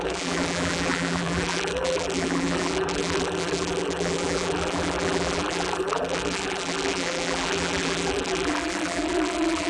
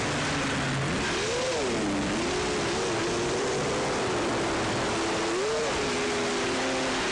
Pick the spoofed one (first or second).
first